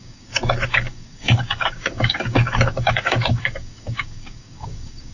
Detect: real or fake fake